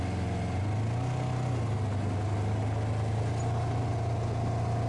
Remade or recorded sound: recorded